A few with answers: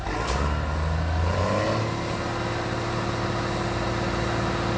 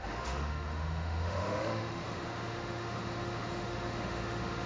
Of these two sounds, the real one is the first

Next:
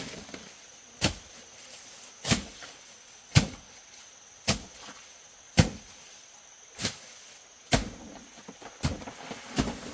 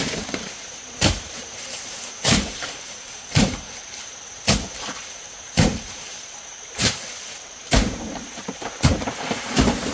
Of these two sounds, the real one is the first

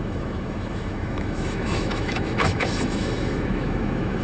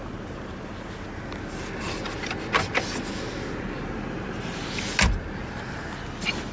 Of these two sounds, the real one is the second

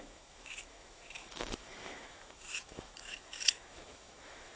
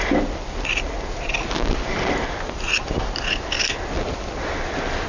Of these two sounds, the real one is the second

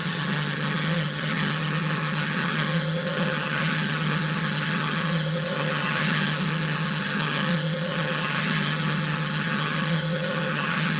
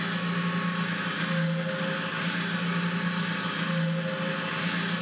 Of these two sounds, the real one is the second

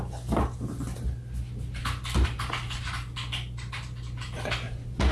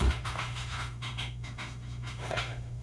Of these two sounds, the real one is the first